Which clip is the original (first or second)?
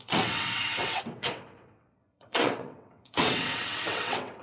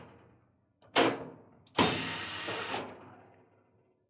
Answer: second